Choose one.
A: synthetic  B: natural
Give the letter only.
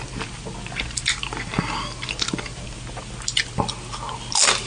B